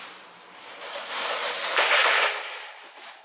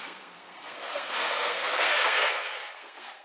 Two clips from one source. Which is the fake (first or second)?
second